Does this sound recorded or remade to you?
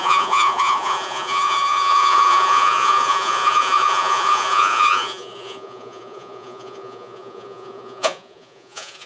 remade